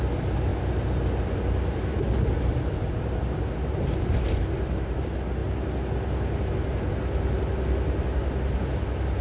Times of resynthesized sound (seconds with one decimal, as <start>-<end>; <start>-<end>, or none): none